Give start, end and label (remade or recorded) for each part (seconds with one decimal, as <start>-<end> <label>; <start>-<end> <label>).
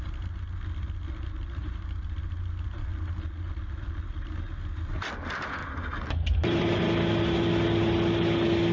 0.0-1.6 recorded; 1.6-2.8 remade; 2.8-5.6 recorded; 5.6-6.9 remade; 6.9-8.7 recorded